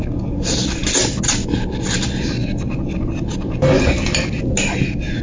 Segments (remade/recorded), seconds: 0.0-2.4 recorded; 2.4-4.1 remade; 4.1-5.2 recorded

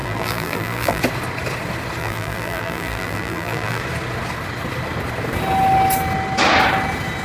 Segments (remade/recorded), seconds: 0.0-1.0 remade; 1.0-2.0 recorded; 2.0-3.8 remade; 3.8-7.2 recorded

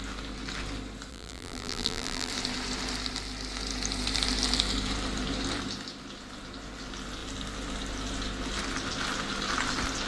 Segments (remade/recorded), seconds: 0.0-1.1 recorded; 1.1-2.3 remade; 2.3-10.1 recorded

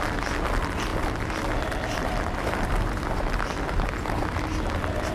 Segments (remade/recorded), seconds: 0.0-0.9 recorded; 0.9-4.0 remade; 4.0-5.1 recorded

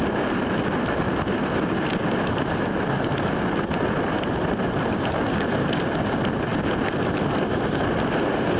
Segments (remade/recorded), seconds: 0.0-8.6 recorded

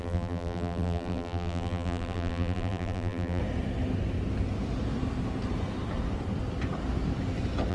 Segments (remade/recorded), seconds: 0.0-3.4 remade; 3.4-7.7 recorded

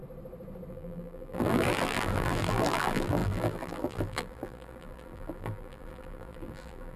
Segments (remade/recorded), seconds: 0.0-0.7 recorded; 0.7-7.0 remade